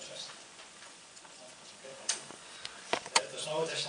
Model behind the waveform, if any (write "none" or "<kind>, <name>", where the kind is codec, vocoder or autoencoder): vocoder, Vocos